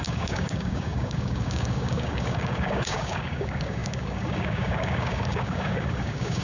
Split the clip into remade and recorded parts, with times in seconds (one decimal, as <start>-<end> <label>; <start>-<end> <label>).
0.0-6.4 remade